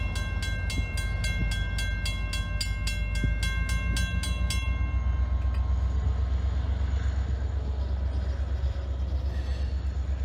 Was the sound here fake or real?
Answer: real